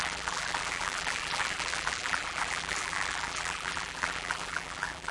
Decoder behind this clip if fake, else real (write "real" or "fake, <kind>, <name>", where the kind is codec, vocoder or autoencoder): fake, vocoder, BigVGAN v2